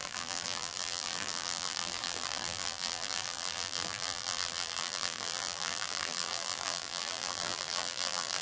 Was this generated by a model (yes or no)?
yes